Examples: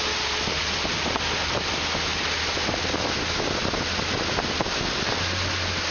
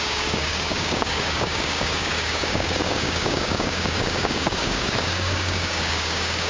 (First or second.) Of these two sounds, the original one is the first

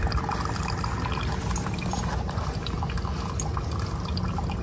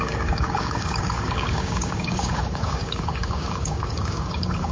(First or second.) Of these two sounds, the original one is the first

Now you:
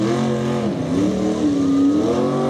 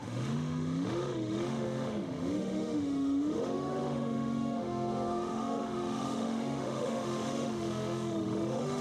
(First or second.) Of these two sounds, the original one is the first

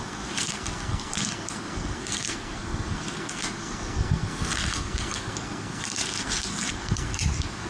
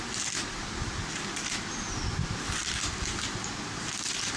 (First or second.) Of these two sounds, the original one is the second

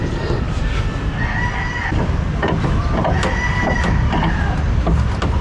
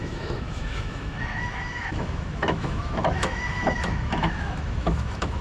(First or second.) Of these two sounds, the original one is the first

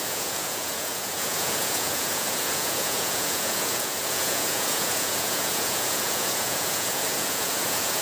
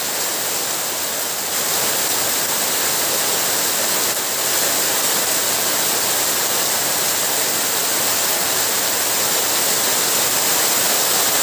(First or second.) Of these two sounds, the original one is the second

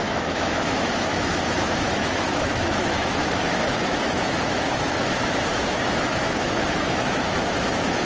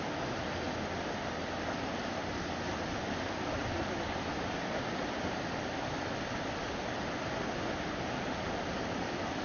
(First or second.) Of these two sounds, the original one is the second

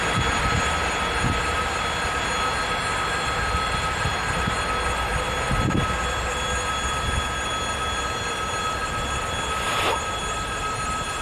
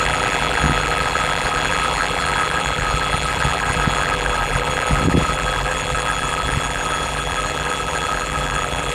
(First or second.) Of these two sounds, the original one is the first